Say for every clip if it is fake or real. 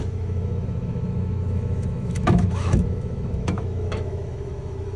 fake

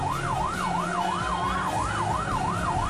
real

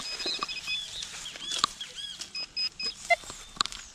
real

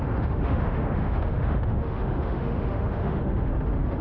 fake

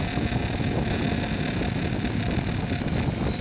real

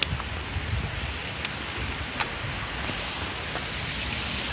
real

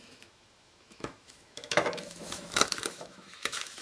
fake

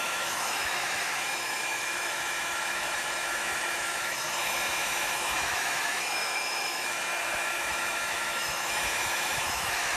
fake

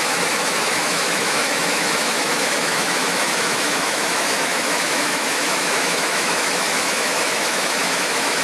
fake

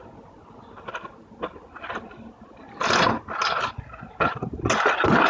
real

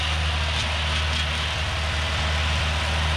real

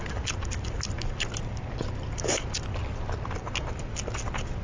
real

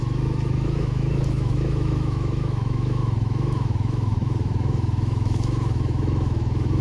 fake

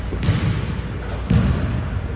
real